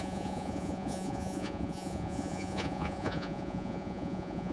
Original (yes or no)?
no